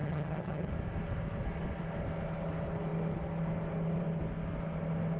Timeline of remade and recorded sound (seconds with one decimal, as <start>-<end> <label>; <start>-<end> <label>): 0.0-0.7 remade; 0.7-5.2 recorded